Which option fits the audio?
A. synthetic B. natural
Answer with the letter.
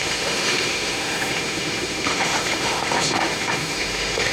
A